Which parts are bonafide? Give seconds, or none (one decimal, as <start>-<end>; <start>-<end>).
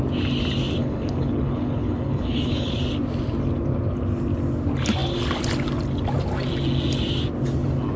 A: 0.0-0.8; 2.7-8.0